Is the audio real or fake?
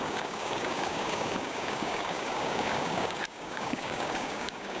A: fake